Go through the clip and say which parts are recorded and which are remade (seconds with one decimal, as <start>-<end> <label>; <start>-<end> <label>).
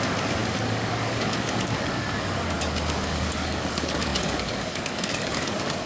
0.0-5.9 remade